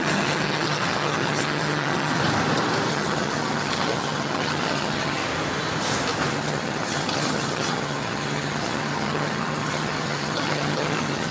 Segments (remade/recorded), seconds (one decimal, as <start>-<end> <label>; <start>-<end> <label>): 0.0-2.2 remade; 2.2-2.9 recorded; 2.9-5.2 remade; 5.2-6.3 recorded; 6.3-11.3 remade